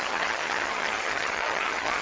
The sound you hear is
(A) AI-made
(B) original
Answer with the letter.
A